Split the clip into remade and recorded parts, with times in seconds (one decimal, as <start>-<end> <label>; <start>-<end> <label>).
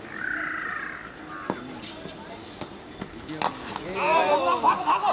0.0-5.1 recorded